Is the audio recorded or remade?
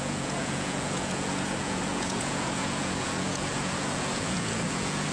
remade